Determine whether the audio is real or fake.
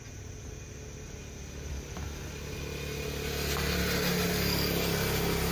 real